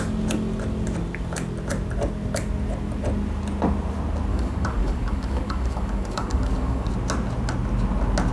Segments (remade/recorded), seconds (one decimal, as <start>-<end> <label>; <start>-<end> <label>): 0.0-4.3 recorded; 4.3-6.9 remade; 6.9-8.3 recorded